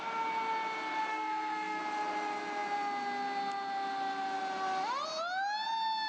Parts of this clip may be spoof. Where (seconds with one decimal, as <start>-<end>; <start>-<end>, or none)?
1.1-1.8